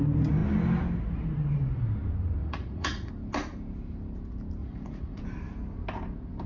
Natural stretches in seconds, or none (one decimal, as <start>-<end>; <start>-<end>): 0.0-2.4; 3.1-4.6; 5.2-6.5